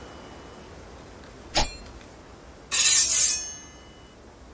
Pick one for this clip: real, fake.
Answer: real